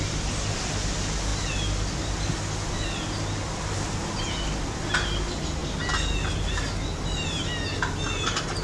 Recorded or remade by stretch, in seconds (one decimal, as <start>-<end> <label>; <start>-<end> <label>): 0.0-8.6 recorded